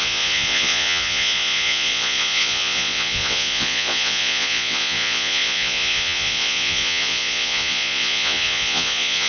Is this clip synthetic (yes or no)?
yes